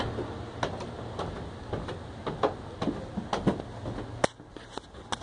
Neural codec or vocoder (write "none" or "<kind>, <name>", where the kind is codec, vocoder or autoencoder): none